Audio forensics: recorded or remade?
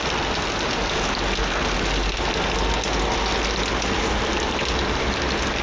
recorded